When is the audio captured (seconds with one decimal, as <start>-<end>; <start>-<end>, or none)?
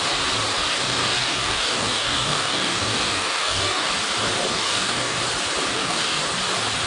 0.0-0.7; 3.9-4.5; 5.2-5.7; 6.2-6.9